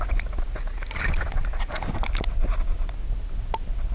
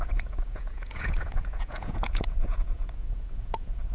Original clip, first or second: first